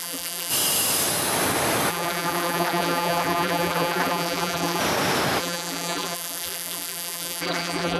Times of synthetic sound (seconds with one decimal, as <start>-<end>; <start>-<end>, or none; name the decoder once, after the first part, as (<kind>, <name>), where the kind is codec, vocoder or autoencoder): 0.0-0.5 (vocoder, BigVGAN v2); 1.9-4.8; 5.4-8.0